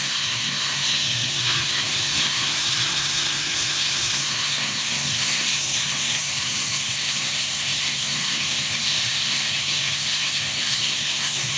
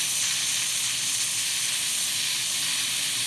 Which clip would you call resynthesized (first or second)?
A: first